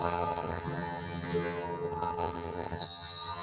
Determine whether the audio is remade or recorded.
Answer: remade